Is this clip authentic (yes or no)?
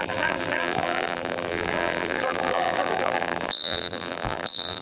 no